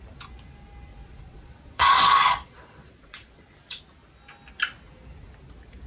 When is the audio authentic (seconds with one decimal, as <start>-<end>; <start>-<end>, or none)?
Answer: 0.0-0.9; 3.8-5.9